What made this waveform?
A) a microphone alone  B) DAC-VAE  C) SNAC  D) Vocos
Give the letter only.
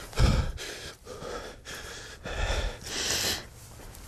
A